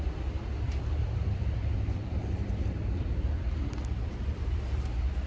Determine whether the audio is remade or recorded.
remade